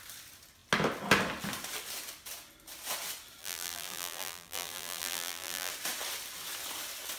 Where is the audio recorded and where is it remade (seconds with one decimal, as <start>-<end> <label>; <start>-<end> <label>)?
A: 0.0-3.4 recorded; 3.4-5.7 remade; 5.7-7.2 recorded